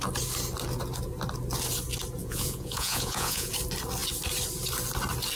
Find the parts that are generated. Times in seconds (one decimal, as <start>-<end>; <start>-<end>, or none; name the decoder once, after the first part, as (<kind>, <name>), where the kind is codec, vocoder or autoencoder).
2.2-3.5 (vocoder, Vocos)